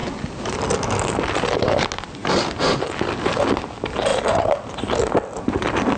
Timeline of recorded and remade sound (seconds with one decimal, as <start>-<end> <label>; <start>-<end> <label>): 0.0-6.0 recorded